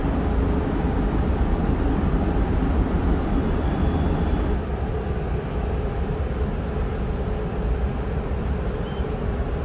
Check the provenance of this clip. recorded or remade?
recorded